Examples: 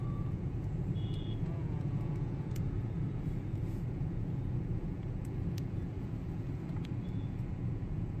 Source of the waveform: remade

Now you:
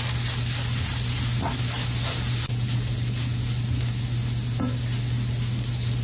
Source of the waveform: recorded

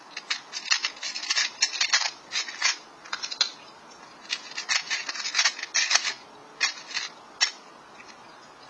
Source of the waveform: recorded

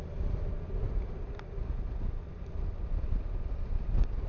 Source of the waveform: recorded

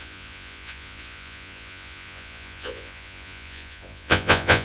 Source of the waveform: remade